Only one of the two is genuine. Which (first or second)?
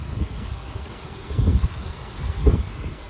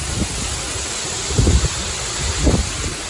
second